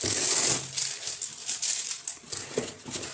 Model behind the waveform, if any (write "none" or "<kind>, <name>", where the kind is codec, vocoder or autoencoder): none